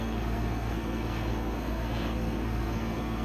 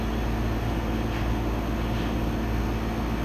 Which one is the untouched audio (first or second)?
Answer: second